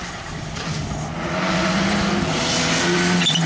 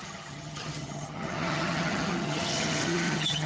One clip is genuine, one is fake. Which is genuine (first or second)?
first